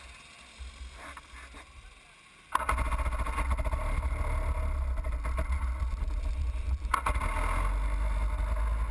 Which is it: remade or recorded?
recorded